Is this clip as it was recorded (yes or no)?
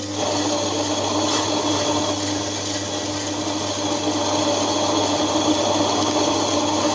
yes